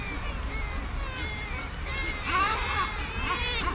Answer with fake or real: real